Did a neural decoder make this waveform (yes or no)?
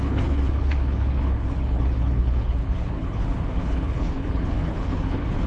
yes